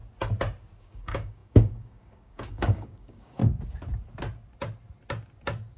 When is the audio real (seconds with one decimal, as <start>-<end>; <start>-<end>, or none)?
0.0-0.8; 3.4-5.8